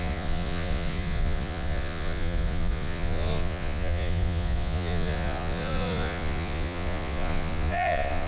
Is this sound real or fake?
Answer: fake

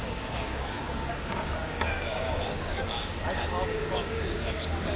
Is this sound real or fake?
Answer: fake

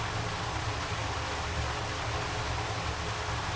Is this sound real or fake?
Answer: real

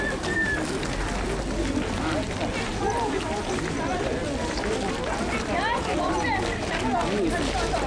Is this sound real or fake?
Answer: real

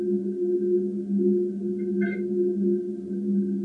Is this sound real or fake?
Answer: real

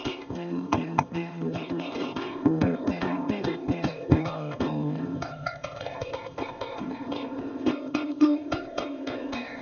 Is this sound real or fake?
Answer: fake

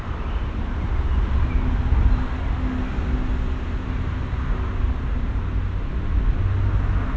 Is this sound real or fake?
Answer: real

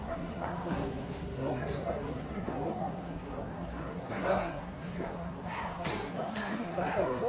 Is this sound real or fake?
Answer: fake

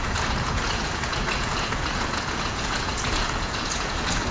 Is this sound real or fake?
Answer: fake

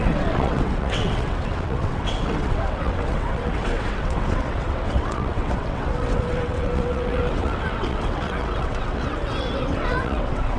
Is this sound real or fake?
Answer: fake